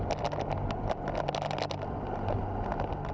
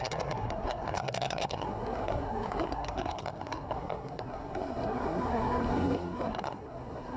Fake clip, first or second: second